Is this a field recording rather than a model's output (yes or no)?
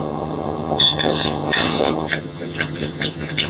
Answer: no